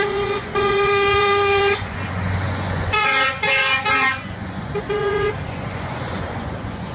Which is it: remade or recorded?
remade